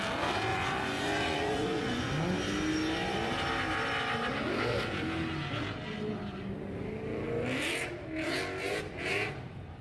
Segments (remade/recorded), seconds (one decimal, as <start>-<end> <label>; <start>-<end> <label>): 0.0-0.5 recorded; 0.5-2.1 remade; 2.1-9.8 recorded